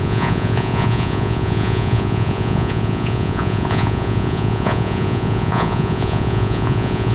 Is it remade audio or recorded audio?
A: remade